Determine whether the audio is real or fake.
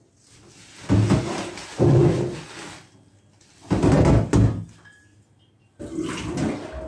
real